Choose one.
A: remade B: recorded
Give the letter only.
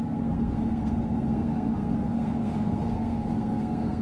A